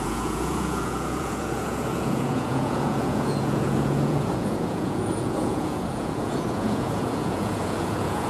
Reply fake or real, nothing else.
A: fake